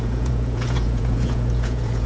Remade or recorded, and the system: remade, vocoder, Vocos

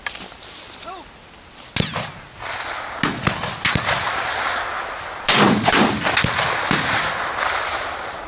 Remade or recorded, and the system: recorded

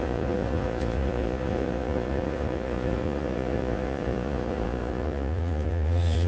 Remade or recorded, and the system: remade, vocoder, Vocos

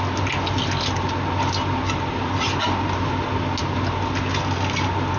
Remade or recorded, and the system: recorded